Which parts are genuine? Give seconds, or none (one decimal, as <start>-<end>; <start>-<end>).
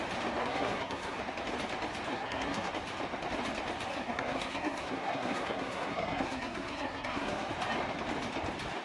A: 0.0-0.4; 1.2-2.1; 2.7-3.9; 7.5-8.8